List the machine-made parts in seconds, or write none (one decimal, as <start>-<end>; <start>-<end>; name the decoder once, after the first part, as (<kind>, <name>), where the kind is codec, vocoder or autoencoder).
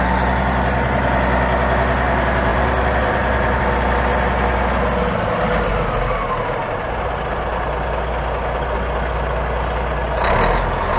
2.5-3.6 (vocoder, BigVGAN v2); 5.7-7.1